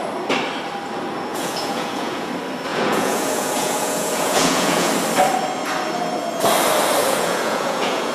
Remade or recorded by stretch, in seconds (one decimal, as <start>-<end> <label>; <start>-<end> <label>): 0.0-1.3 recorded; 1.3-2.3 remade; 2.3-2.7 recorded; 2.7-4.9 remade; 4.9-7.0 recorded; 7.0-8.1 remade